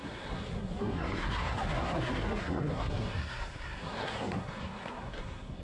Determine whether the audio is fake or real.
fake